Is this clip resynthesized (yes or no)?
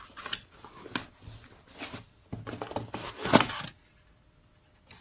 no